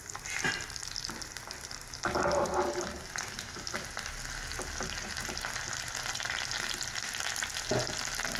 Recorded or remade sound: recorded